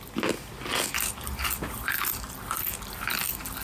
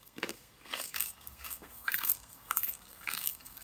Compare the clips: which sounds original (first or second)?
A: first